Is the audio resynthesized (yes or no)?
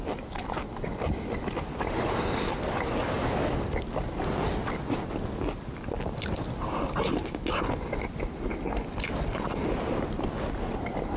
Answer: no